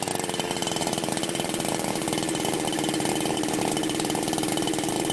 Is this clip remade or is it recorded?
remade